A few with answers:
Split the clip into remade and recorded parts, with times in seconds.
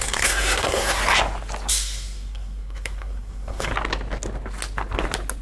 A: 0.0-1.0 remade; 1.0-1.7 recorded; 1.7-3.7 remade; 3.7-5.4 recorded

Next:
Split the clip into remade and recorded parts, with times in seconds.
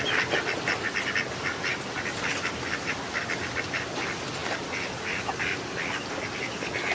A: 0.0-6.9 recorded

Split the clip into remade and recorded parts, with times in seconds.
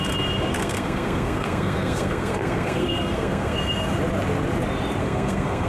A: 0.0-0.5 recorded; 0.5-3.9 remade; 3.9-5.0 recorded; 5.0-5.7 remade